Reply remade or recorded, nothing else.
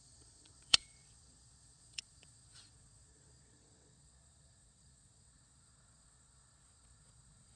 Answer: remade